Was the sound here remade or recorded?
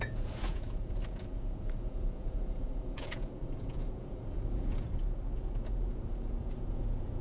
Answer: remade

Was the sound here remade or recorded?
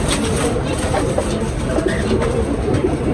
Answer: recorded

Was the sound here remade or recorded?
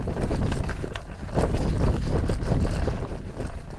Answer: recorded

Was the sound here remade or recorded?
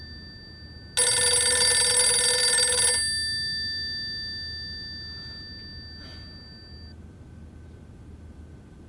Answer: recorded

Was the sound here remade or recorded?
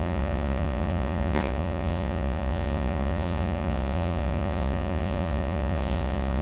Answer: remade